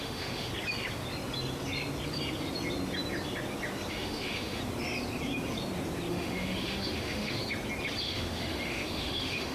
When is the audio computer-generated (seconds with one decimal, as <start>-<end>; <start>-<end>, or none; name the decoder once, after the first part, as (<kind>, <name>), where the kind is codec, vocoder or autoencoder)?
0.0-0.5 (autoencoder, DAC-VAE); 3.9-4.6; 6.1-7.4; 8.0-9.5